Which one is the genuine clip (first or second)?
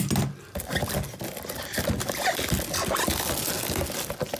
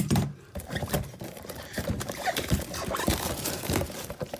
first